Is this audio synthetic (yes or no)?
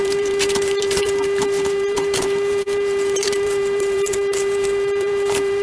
yes